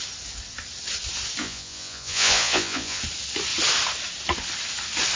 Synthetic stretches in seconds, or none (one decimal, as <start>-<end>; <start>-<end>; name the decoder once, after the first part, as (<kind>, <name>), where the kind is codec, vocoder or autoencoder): 1.4-3.0 (vocoder, Vocos)

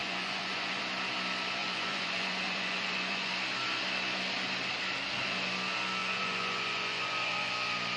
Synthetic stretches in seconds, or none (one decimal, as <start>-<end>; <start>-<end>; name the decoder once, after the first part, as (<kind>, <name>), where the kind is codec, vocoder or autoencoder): 0.0-0.8 (vocoder, Vocos); 1.6-3.3; 6.0-7.5

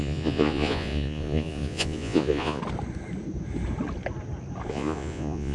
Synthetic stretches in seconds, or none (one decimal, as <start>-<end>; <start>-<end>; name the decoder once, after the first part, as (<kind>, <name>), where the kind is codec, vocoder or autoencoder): 0.0-2.6 (vocoder, Vocos); 4.7-5.5

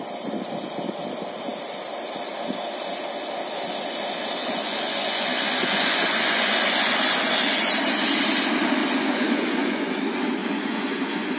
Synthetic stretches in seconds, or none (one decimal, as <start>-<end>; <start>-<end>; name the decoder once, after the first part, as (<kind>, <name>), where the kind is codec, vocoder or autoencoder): 4.4-7.7 (vocoder, Vocos); 8.8-10.0; 10.4-11.4